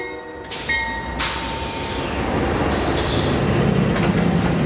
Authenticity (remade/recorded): recorded